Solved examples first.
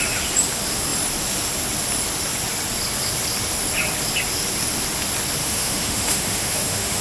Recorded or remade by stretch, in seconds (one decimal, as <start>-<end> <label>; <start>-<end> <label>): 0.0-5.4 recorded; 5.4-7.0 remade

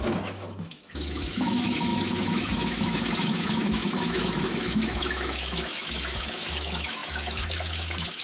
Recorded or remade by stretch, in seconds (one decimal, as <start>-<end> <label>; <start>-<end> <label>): 0.0-8.2 remade

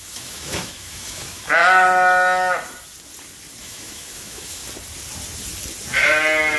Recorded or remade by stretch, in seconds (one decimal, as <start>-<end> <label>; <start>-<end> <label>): 0.0-1.6 remade; 1.6-3.6 recorded; 3.6-4.6 remade; 4.6-6.6 recorded